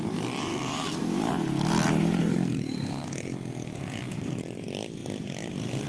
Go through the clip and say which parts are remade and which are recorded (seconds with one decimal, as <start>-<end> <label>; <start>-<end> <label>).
0.0-0.5 recorded; 0.5-1.3 remade; 1.3-2.2 recorded; 2.2-4.4 remade; 4.4-5.9 recorded